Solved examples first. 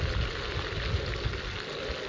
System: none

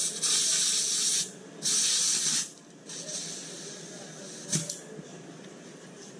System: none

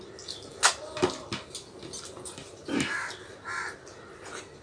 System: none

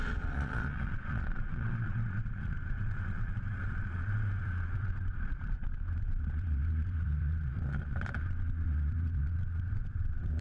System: vocoder, Vocos